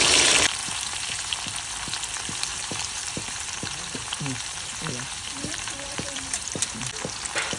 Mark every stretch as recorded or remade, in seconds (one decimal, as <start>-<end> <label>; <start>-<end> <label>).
0.0-0.6 recorded; 0.6-1.3 remade; 1.3-2.5 recorded; 2.5-6.9 remade; 6.9-7.6 recorded